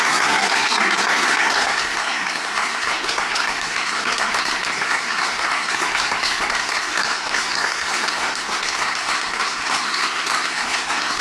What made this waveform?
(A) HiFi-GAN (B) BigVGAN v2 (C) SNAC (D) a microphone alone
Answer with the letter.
C